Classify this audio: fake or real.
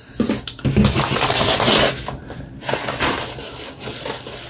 real